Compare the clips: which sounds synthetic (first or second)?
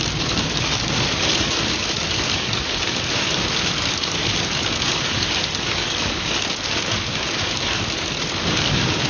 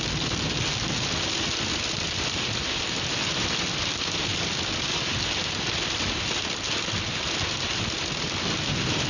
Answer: first